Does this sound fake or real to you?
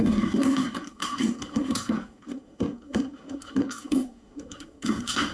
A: fake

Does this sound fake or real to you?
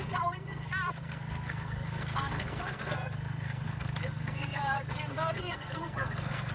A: fake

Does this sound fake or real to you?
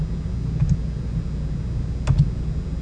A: real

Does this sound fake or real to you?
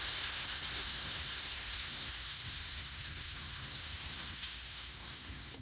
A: fake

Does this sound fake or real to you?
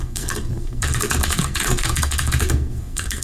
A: fake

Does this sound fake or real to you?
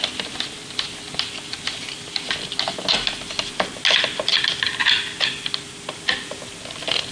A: real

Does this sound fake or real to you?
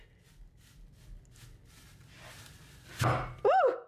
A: real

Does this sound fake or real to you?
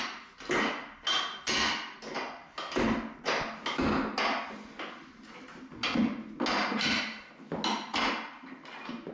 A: real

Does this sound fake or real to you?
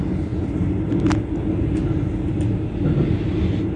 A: real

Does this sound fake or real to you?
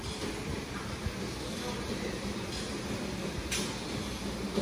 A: real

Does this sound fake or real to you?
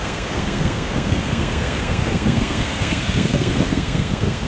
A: fake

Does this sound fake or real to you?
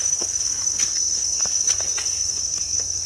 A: fake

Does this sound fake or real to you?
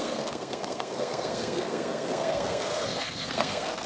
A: fake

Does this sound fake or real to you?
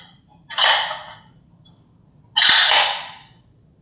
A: real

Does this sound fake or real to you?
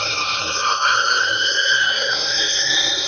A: fake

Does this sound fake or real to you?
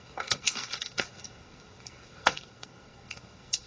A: fake